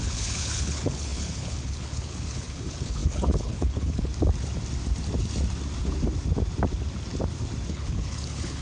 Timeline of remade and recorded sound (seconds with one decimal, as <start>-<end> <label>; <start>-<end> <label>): 0.0-4.1 remade; 4.1-7.7 recorded; 7.7-8.6 remade